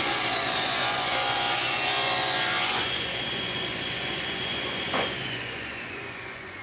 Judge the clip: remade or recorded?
remade